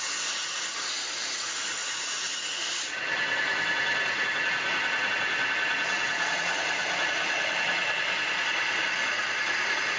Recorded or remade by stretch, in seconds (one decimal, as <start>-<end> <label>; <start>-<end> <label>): 0.0-10.0 remade